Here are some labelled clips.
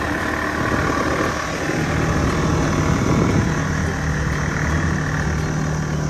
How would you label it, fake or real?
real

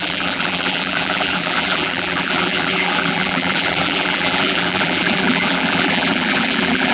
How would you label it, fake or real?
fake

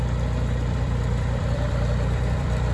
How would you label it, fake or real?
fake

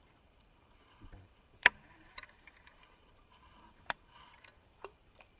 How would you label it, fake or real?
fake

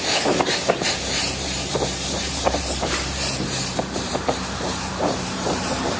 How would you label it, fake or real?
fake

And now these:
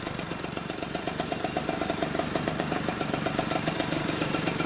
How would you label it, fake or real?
fake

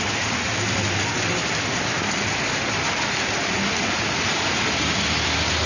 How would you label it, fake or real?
real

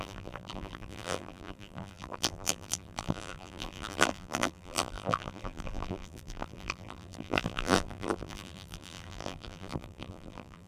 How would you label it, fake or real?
fake